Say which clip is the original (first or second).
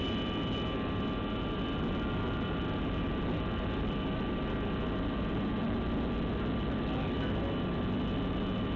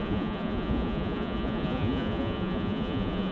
first